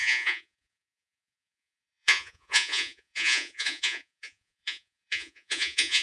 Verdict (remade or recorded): remade